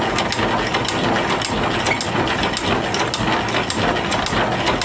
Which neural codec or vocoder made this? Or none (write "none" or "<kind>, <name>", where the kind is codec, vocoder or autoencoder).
none